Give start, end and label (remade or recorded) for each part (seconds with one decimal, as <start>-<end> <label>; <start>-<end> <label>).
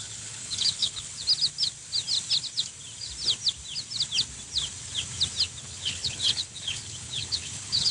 0.0-1.2 remade; 1.2-5.6 recorded; 5.6-7.9 remade